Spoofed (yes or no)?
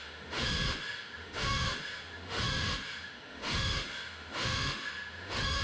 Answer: yes